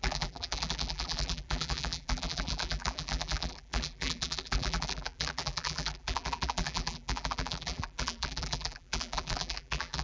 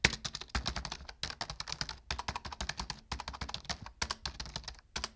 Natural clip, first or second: second